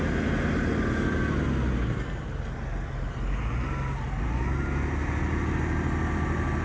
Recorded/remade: recorded